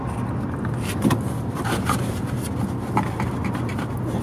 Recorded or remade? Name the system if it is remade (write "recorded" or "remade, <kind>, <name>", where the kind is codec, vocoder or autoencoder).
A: recorded